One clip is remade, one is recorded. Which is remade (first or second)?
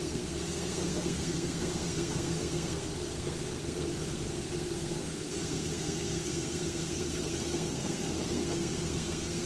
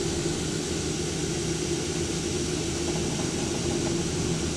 first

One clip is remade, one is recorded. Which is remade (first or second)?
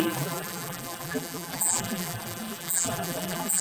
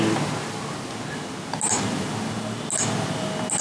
first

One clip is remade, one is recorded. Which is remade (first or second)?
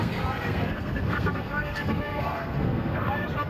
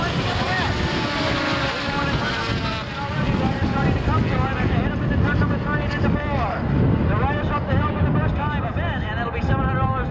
first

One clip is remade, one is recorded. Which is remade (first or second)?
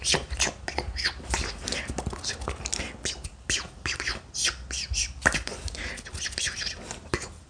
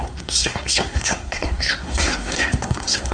second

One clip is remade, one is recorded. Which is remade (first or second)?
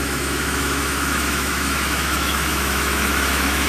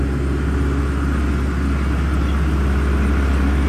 first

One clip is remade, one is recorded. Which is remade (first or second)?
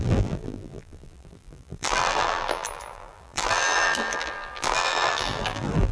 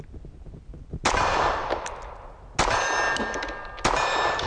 first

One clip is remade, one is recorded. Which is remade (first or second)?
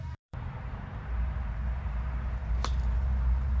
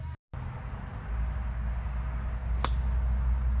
first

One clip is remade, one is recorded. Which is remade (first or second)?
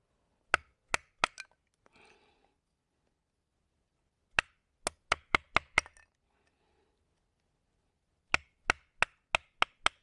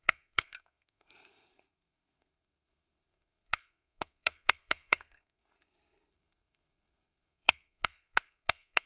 second